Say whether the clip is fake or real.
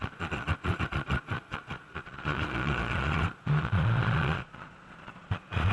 fake